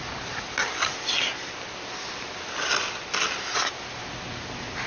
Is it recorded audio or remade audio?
recorded